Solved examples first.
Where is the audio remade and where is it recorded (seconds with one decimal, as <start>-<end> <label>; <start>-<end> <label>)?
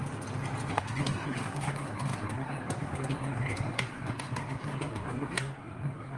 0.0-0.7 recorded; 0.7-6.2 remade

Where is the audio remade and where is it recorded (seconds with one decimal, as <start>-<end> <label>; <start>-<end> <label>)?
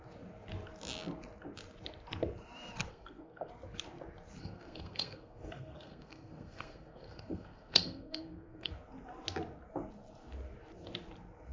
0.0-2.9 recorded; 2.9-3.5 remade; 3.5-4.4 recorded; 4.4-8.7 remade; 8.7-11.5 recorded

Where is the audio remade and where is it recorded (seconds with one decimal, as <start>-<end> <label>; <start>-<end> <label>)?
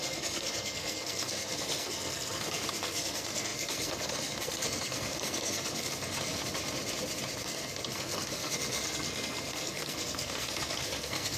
0.0-6.4 remade; 6.4-7.4 recorded; 7.4-11.4 remade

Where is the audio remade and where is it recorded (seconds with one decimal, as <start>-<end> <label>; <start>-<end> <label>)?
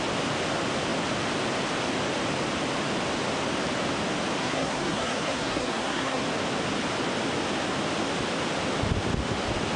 0.0-4.4 recorded; 4.4-6.2 remade; 6.2-9.8 recorded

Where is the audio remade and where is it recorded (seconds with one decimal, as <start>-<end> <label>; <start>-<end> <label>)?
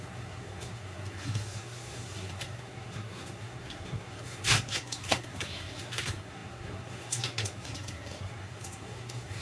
0.0-9.4 remade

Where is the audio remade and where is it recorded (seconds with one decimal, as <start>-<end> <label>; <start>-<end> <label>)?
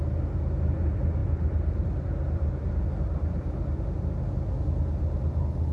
0.0-5.7 recorded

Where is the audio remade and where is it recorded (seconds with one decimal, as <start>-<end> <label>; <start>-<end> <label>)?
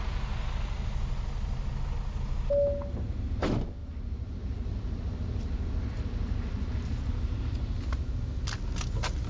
0.0-9.3 recorded